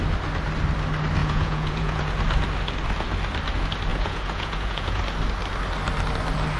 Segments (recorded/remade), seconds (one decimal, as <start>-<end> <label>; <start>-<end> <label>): 0.0-1.2 recorded; 1.2-2.0 remade; 2.0-3.9 recorded; 3.9-5.0 remade; 5.0-6.6 recorded

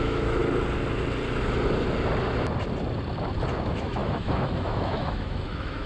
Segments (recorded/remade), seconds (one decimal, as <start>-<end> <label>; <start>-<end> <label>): 0.0-0.4 remade; 0.4-3.5 recorded; 3.5-5.9 remade

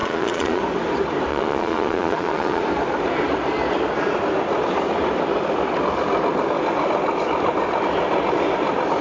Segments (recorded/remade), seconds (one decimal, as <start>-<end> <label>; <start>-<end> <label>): 0.0-0.6 remade; 0.6-1.3 recorded; 1.3-2.6 remade; 2.6-9.0 recorded

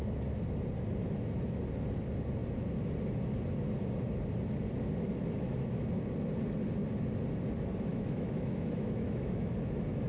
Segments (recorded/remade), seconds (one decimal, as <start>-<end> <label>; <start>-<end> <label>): 0.0-7.9 recorded; 7.9-9.5 remade; 9.5-10.1 recorded

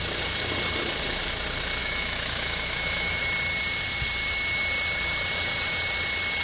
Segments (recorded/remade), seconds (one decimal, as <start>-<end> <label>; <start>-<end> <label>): 0.0-1.8 recorded; 1.8-3.2 remade; 3.2-6.4 recorded

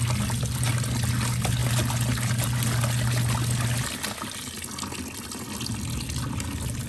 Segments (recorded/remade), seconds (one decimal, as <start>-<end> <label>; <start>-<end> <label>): 0.0-6.9 recorded

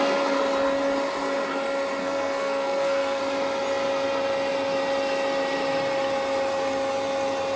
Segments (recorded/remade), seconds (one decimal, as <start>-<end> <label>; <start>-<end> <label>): 0.0-2.0 recorded; 2.0-3.2 remade; 3.2-7.6 recorded

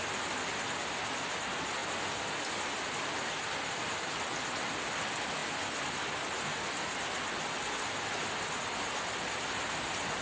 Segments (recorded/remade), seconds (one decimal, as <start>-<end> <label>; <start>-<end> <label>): 0.0-10.2 recorded